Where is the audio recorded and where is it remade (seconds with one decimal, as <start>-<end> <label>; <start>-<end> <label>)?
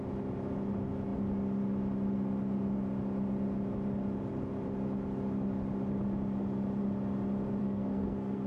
0.0-7.6 recorded; 7.6-8.5 remade